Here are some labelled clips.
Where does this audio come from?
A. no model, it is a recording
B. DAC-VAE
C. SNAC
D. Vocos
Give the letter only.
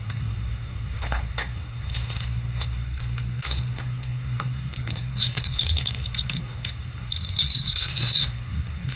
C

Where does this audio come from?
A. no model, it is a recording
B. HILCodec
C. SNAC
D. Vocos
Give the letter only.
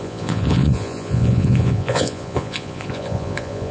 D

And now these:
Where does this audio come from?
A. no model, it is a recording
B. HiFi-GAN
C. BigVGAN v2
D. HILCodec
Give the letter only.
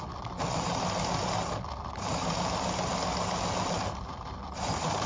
A